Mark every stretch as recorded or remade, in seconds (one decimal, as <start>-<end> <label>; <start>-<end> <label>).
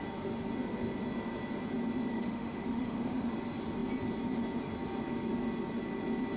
0.0-2.1 recorded; 2.1-3.3 remade; 3.3-6.4 recorded